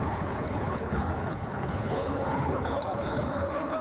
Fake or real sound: fake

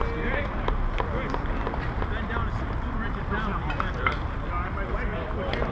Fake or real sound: real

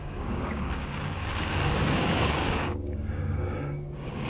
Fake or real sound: fake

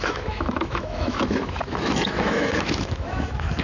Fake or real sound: fake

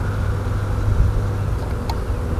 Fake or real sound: real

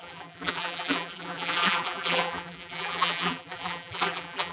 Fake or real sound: fake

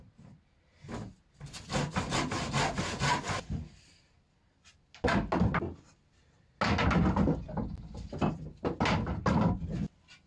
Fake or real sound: real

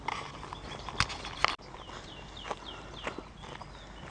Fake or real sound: real